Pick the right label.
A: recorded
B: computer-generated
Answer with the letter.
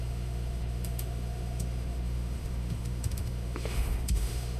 B